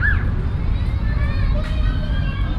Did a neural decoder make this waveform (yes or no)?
no